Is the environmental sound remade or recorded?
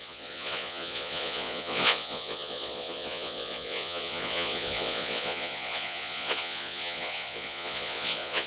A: remade